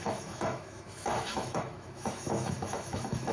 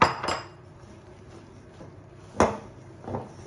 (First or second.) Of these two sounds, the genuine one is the second